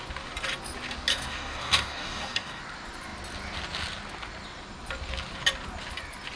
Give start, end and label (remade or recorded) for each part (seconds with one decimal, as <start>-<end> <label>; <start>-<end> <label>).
0.0-1.1 recorded; 1.1-2.6 remade; 2.6-6.4 recorded